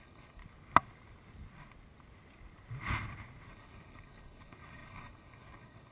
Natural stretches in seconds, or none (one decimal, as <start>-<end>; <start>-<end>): 0.4-3.5